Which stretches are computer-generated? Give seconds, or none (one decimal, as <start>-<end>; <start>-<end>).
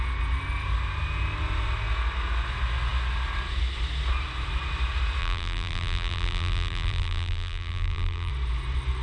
5.2-8.3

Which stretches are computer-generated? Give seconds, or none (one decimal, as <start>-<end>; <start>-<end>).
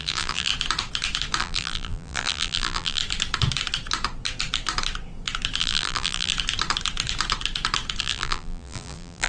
0.0-0.5; 1.4-3.0; 5.6-6.3; 8.0-9.3